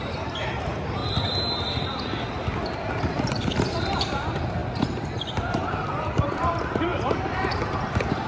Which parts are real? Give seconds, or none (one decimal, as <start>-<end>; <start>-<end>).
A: 1.0-3.5